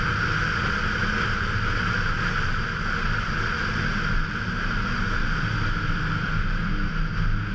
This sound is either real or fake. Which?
real